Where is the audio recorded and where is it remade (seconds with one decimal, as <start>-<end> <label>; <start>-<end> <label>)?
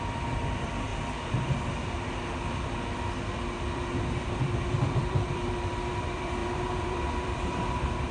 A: 0.0-0.9 remade; 0.9-3.7 recorded; 3.7-8.1 remade